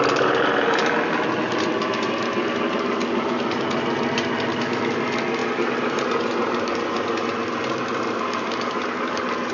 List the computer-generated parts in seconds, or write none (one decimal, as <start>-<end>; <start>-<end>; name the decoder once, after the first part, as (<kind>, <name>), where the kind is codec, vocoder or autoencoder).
none